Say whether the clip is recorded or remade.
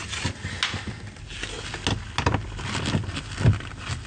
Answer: recorded